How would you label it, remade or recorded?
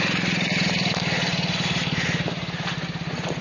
recorded